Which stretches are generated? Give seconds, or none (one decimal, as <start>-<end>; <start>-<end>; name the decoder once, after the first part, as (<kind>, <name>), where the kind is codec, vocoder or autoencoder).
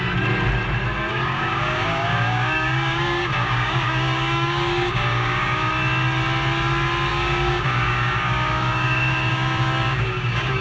1.1-5.7 (codec, DAC); 7.1-10.6